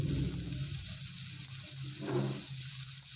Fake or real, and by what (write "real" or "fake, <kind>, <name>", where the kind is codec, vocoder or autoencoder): real